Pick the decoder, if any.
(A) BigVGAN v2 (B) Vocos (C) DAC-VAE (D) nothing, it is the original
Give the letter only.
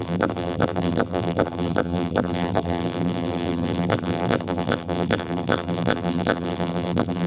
A